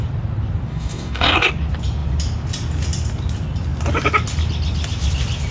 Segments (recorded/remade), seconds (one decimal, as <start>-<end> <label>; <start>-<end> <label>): 0.0-0.7 recorded; 0.7-1.5 remade; 1.5-5.5 recorded